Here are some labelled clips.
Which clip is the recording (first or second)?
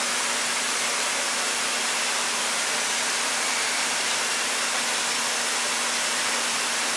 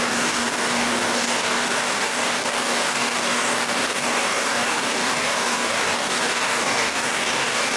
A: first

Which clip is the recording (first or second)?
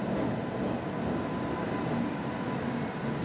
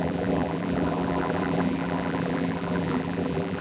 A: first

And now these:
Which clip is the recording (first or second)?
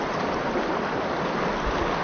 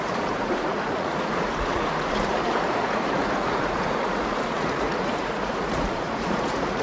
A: first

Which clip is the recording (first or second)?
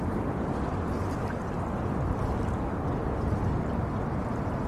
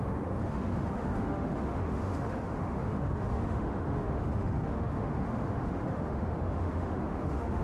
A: first